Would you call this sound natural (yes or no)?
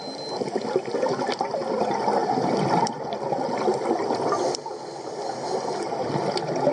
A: yes